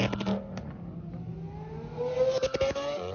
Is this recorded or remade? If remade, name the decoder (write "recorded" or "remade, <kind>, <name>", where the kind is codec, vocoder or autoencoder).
recorded